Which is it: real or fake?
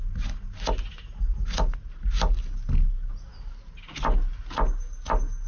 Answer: real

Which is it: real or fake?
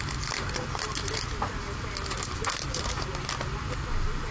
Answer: real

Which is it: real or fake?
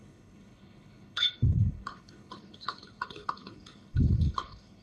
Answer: fake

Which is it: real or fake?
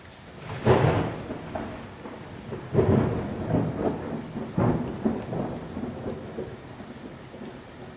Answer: real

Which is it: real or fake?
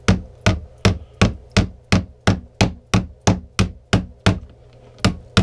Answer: real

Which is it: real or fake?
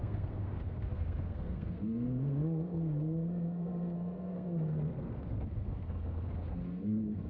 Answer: fake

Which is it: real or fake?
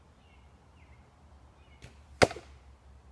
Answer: real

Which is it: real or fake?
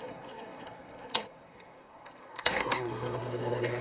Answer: fake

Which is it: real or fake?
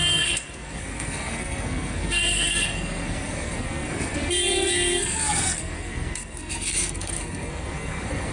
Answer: fake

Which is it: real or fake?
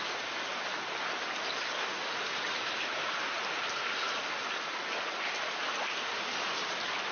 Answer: real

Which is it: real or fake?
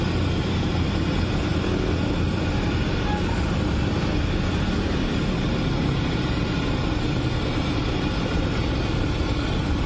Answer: real